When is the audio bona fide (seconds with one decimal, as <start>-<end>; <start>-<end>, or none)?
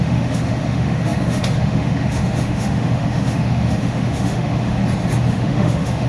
4.8-5.3